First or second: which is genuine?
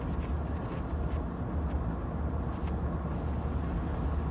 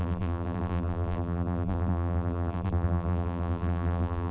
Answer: first